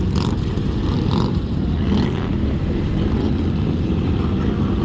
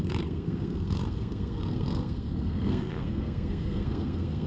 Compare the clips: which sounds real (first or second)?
first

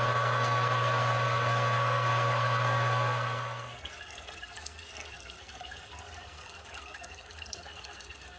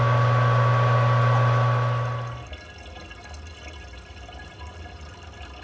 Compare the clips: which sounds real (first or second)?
second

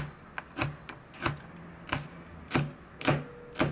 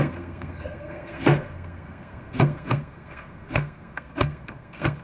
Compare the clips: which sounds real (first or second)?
first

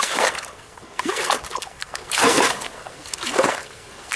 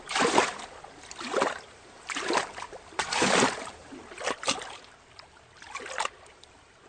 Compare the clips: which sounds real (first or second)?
second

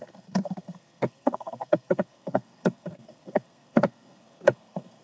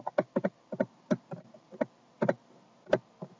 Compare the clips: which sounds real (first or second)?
second